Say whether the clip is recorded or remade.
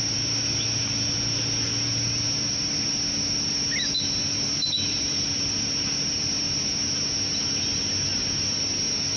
recorded